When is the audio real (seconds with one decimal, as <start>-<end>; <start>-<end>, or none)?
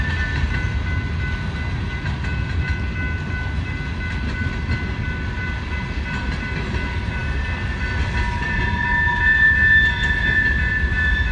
0.0-11.3